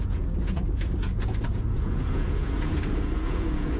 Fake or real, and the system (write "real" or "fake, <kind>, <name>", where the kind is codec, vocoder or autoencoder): fake, vocoder, Vocos